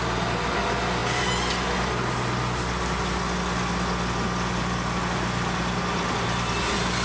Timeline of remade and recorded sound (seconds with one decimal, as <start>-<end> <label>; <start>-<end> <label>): 0.0-7.0 recorded